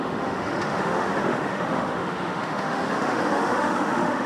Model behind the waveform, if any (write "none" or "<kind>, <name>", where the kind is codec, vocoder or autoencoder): autoencoder, DAC-VAE